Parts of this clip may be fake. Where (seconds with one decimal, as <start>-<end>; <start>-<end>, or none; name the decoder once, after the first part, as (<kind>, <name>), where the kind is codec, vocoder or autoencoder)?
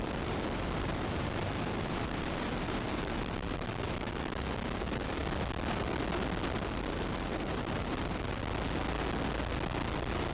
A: 0.0-5.2 (vocoder, BigVGAN v2); 6.6-8.4